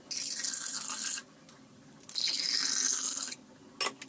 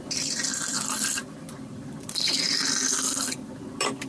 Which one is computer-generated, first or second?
second